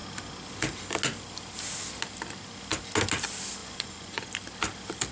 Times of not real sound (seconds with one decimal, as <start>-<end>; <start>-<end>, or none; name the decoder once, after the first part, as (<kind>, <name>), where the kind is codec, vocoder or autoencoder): 3.6-4.3 (vocoder, Vocos)